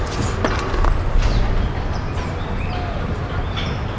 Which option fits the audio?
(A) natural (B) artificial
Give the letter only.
A